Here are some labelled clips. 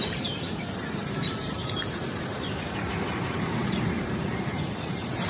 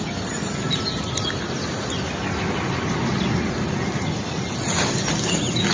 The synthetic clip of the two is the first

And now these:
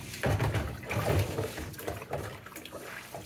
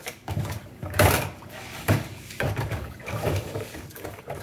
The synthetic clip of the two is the second